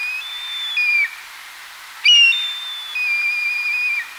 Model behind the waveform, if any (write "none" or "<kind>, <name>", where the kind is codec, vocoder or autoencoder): none